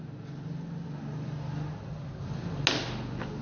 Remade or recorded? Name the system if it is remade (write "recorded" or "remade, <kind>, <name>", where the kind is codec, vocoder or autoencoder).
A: recorded